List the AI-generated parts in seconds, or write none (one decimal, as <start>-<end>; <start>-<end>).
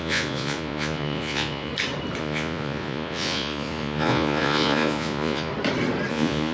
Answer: 0.0-1.7; 2.2-5.5; 6.1-6.5